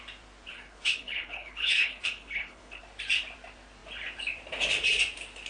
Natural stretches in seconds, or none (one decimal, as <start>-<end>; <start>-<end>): 0.0-0.5; 2.8-5.5